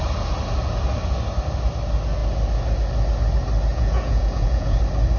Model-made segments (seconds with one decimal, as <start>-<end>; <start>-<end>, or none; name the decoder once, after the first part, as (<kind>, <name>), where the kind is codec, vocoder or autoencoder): 3.7-4.8 (vocoder, Vocos)